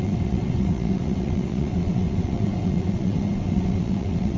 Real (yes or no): no